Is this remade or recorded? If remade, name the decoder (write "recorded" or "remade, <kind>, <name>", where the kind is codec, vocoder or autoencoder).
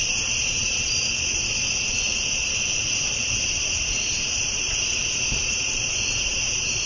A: remade, vocoder, BigVGAN v2